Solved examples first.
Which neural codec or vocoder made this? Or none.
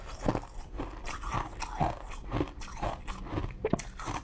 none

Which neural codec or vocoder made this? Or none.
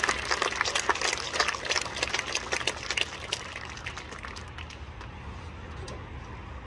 none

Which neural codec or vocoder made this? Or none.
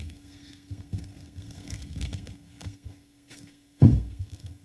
codec, SNAC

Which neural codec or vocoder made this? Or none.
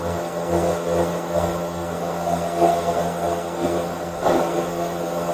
codec, SNAC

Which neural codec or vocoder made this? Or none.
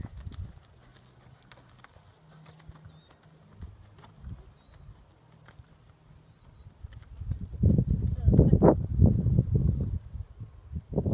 none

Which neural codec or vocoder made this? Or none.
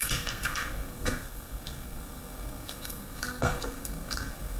codec, SNAC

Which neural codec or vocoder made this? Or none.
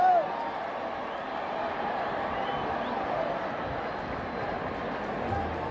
none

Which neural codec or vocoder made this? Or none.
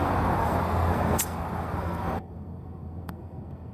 codec, SNAC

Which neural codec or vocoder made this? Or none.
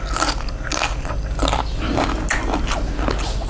none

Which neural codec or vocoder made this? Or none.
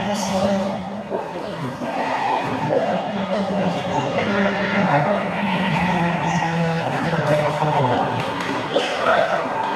codec, SNAC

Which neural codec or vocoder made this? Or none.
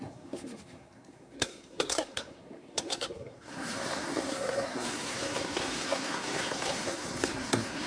codec, SNAC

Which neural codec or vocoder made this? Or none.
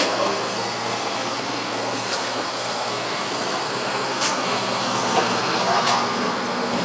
codec, SNAC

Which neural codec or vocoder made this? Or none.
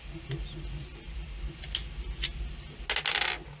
none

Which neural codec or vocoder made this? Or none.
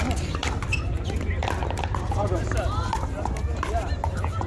none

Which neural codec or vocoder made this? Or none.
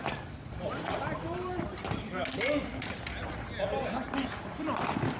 none